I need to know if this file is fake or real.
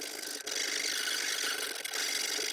real